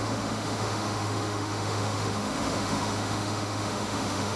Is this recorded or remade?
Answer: remade